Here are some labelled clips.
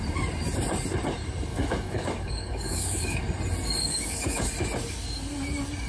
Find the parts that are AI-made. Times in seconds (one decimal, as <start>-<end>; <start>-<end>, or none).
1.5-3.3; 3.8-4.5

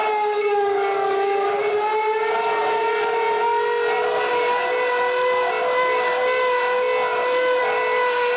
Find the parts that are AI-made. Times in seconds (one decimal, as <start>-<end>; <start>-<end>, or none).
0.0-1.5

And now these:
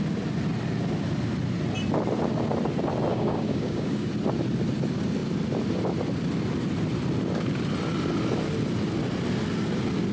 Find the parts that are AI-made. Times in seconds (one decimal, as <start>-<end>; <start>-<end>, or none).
3.1-4.1

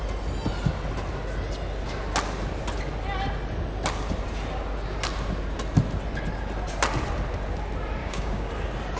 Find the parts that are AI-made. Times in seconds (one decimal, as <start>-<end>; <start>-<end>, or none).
8.0-8.5